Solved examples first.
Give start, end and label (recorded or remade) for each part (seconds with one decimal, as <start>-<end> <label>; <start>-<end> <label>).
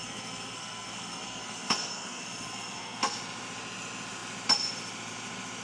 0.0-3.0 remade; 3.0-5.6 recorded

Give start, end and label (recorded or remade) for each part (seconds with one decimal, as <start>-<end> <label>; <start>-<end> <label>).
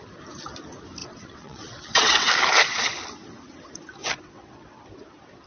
0.0-1.0 recorded; 1.0-2.3 remade; 2.3-4.0 recorded; 4.0-4.8 remade; 4.8-5.5 recorded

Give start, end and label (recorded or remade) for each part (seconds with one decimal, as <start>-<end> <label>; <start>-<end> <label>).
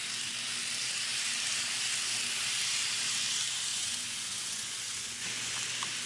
0.0-3.7 recorded; 3.7-5.5 remade; 5.5-6.1 recorded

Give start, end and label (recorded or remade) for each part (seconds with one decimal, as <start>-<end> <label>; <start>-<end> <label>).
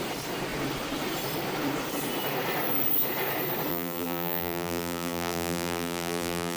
0.0-3.7 recorded; 3.7-6.6 remade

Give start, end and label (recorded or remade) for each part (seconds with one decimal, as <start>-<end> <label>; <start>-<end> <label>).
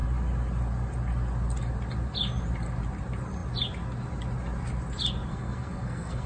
0.0-5.3 recorded; 5.3-6.3 remade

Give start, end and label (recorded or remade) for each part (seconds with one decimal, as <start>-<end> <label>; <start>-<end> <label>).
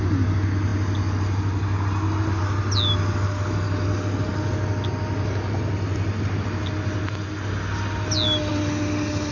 0.0-9.3 recorded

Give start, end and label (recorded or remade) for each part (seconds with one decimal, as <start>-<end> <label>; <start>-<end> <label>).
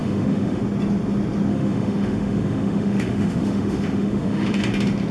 0.0-0.6 remade; 0.6-1.5 recorded; 1.5-4.6 remade; 4.6-5.1 recorded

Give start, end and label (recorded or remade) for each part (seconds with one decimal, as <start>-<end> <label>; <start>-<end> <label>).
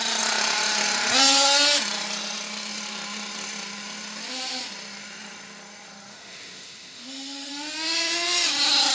0.0-6.1 recorded; 6.1-7.5 remade; 7.5-8.9 recorded